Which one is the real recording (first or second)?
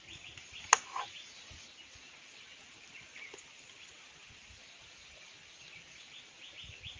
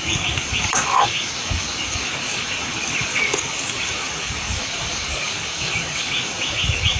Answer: first